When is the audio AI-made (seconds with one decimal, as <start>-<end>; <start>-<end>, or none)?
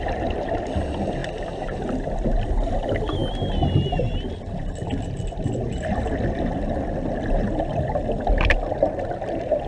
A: none